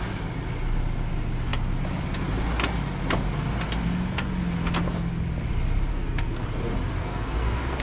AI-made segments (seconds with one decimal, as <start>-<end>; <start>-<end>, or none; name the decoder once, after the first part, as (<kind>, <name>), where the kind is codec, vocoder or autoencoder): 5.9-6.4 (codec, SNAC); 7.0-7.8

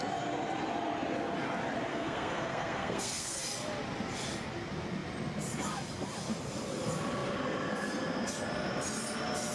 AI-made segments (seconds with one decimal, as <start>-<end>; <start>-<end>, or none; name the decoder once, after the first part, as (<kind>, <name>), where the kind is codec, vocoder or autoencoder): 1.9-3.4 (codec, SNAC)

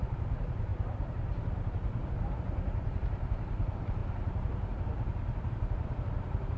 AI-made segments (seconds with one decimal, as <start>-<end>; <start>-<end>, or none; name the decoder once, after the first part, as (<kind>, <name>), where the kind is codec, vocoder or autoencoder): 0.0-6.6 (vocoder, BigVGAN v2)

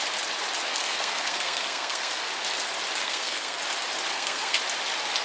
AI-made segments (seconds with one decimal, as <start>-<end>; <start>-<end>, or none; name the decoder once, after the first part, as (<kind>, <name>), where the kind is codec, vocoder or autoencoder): 0.7-2.2 (codec, SNAC); 3.0-3.6; 4.1-4.6

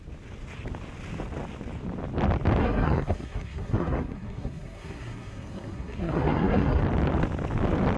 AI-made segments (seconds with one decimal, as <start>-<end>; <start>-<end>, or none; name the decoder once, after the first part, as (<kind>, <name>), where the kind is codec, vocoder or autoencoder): 2.6-6.8 (codec, SNAC)

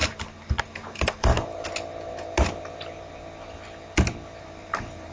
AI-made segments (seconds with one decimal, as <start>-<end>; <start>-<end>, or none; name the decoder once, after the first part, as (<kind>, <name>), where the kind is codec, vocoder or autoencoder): 0.0-1.3 (vocoder, BigVGAN v2); 4.4-5.1